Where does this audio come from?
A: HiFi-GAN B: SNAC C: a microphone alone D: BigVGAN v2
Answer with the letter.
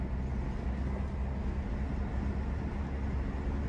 C